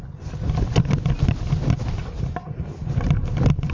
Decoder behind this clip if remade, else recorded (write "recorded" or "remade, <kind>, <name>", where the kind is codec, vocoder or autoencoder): recorded